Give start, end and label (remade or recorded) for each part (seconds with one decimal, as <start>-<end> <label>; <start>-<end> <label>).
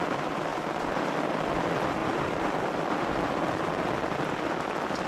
0.0-0.5 recorded; 0.5-1.5 remade; 1.5-2.0 recorded; 2.0-5.1 remade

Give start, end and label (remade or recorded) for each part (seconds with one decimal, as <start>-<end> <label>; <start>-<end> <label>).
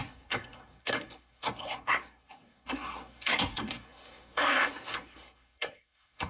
0.0-6.3 remade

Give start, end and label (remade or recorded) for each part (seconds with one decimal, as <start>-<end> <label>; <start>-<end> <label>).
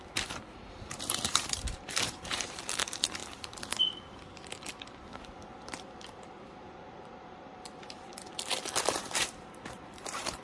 0.0-3.2 remade; 3.2-6.6 recorded; 6.6-8.1 remade; 8.1-8.8 recorded; 8.8-10.4 remade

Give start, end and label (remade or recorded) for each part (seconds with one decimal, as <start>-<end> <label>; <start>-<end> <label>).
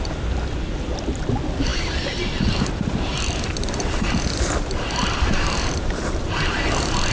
0.0-7.1 recorded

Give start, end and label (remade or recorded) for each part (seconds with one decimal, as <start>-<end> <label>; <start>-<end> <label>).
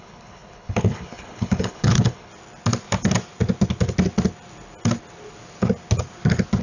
0.0-2.3 remade; 2.3-6.6 recorded